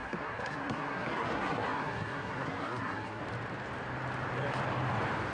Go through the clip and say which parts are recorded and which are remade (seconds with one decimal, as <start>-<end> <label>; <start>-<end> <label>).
0.0-3.2 remade; 3.2-5.3 recorded